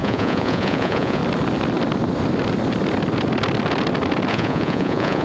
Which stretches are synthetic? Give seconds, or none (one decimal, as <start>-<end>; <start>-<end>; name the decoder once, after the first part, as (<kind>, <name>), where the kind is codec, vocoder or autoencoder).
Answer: 0.0-1.2 (vocoder, Vocos); 4.3-5.2